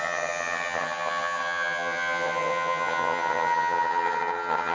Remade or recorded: remade